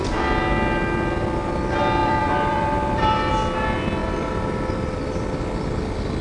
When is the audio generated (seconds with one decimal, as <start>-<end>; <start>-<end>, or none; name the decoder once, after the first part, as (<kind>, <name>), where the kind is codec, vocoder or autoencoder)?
2.0-3.3 (vocoder, BigVGAN v2); 4.0-5.1

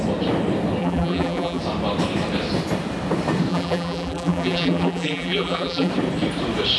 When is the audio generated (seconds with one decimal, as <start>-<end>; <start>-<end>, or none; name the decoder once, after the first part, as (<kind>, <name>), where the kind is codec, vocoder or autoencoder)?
0.8-1.6 (vocoder, BigVGAN v2); 3.5-5.9

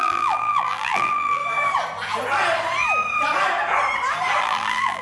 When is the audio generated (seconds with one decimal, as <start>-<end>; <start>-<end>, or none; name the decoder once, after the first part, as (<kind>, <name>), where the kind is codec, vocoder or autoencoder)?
0.0-1.4 (vocoder, BigVGAN v2); 4.4-5.0

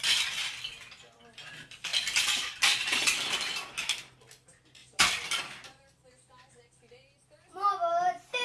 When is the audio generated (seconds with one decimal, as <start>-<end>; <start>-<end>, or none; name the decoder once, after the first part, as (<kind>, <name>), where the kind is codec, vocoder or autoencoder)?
1.9-3.0 (vocoder, BigVGAN v2); 4.8-5.4